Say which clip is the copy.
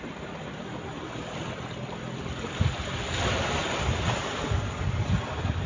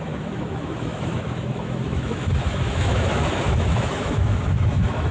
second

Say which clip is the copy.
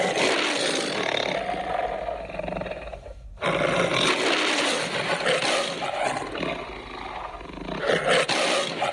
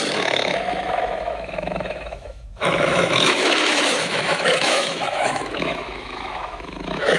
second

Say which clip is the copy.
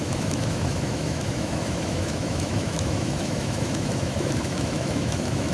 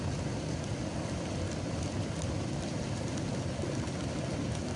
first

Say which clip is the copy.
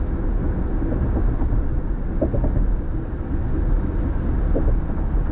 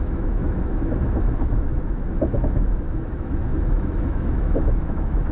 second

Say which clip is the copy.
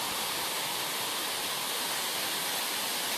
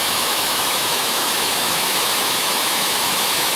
second